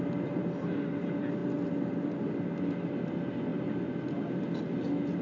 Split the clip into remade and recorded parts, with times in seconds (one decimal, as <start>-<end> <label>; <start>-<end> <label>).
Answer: 0.0-5.2 recorded